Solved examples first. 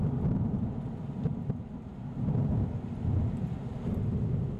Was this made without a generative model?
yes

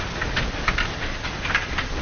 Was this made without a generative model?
yes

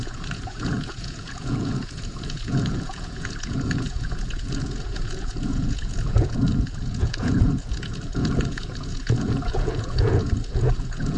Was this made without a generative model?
no